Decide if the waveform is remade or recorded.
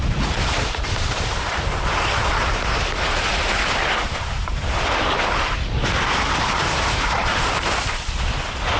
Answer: remade